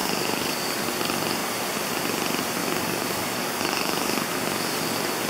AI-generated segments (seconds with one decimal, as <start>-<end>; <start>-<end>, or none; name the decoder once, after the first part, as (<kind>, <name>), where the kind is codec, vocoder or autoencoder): 0.0-0.8 (codec, DAC); 2.6-4.8